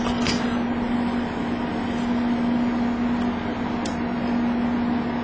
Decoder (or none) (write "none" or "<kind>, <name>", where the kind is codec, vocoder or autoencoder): none